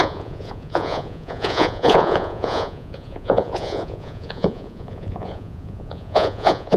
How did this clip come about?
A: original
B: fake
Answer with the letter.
B